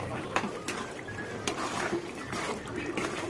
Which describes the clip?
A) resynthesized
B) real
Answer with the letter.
B